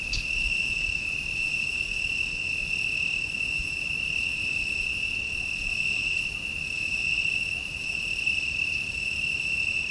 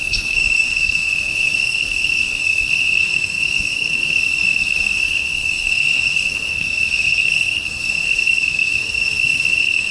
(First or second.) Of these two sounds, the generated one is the second